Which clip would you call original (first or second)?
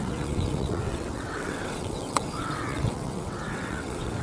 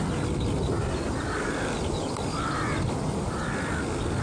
second